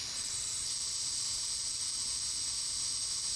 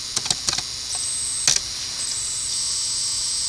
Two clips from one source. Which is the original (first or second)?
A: second